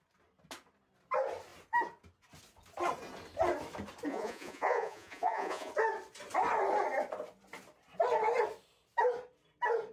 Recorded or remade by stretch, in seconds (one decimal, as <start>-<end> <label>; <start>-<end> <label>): 0.0-4.1 recorded; 4.1-5.7 remade; 5.7-9.9 recorded